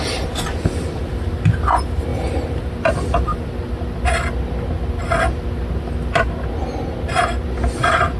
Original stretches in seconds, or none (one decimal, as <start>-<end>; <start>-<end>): 0.0-2.1; 2.7-8.2